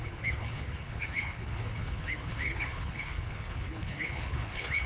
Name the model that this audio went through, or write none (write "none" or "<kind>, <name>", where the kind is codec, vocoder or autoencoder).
codec, HILCodec